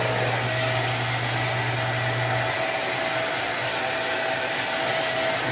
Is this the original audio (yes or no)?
yes